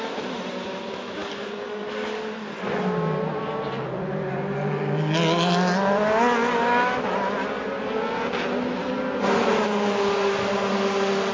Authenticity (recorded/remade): recorded